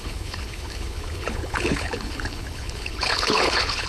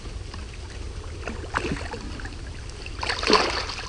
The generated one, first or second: first